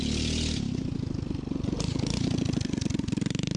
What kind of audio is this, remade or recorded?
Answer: recorded